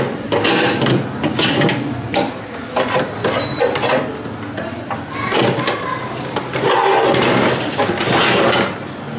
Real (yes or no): yes